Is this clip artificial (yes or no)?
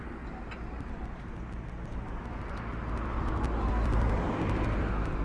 no